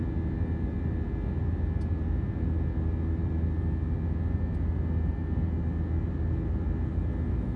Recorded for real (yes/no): yes